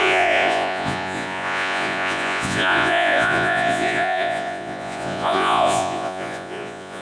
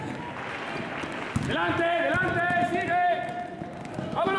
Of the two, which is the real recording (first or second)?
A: second